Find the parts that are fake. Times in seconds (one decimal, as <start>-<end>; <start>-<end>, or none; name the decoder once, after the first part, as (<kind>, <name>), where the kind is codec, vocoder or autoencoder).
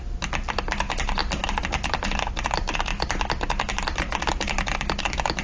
none